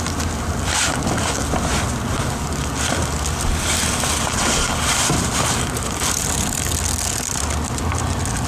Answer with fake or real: real